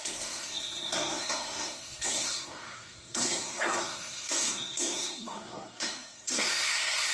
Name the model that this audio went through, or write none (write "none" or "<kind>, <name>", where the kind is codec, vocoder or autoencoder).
codec, SNAC